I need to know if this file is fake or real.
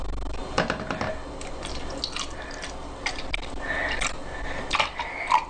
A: real